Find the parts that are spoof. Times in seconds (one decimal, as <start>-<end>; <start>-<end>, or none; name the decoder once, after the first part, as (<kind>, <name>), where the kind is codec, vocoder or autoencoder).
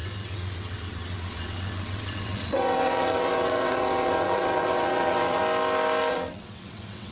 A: 0.0-5.4 (vocoder, WaveNeXt); 6.1-7.1